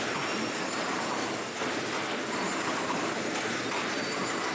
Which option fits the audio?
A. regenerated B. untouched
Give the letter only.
B